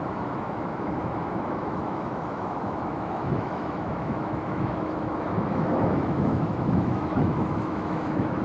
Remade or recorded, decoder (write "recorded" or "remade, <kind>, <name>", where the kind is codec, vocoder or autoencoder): remade, autoencoder, DAC-VAE